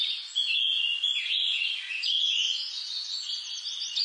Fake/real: fake